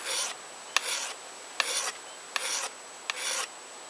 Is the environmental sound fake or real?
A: real